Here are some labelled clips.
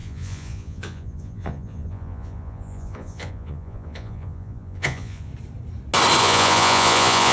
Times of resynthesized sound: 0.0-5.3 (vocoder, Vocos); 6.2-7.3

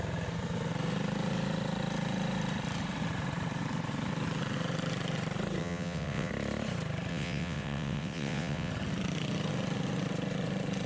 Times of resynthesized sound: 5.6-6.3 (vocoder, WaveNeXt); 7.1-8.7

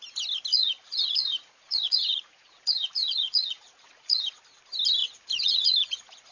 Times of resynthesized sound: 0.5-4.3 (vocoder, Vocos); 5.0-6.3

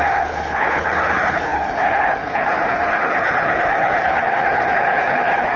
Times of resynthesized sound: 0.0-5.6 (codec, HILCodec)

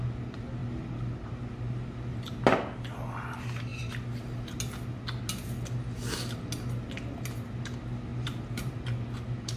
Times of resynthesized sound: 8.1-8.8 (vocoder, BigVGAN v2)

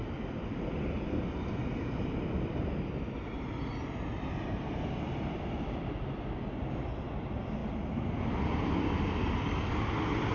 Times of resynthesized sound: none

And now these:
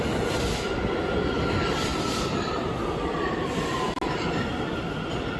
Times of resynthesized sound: none

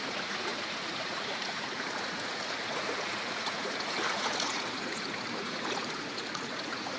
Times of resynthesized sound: 0.0-7.0 (vocoder, Vocos)